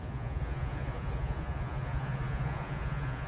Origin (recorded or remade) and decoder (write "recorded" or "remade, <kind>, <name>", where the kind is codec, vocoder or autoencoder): remade, vocoder, Vocos